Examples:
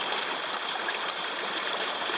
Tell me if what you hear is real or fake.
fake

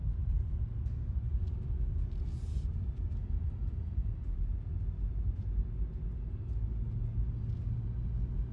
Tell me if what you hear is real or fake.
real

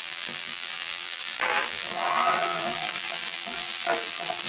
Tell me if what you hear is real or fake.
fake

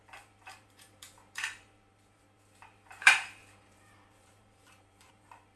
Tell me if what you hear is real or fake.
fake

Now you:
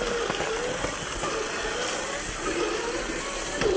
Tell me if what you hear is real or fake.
real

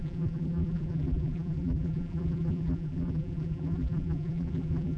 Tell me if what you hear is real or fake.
fake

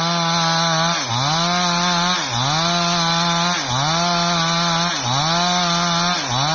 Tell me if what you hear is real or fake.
real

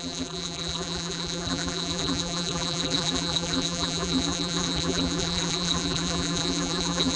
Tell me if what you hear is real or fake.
fake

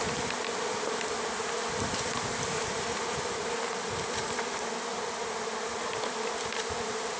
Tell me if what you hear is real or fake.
real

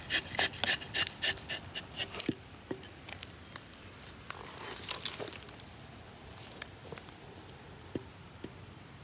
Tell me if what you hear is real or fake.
real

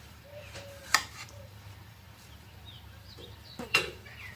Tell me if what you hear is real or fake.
fake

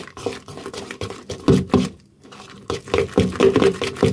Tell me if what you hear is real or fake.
fake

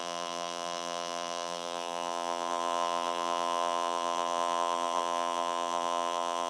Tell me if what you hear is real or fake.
fake